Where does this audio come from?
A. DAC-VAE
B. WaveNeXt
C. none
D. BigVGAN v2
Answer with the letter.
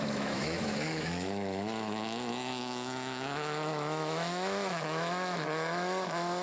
A